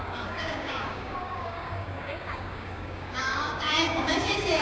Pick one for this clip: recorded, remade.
remade